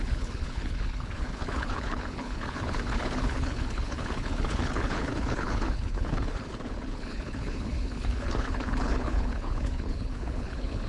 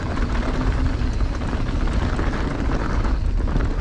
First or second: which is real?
second